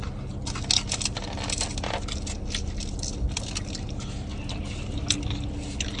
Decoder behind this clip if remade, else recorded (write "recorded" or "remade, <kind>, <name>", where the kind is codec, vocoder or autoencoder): recorded